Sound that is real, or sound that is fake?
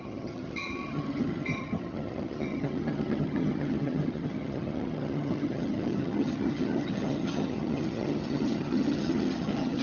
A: fake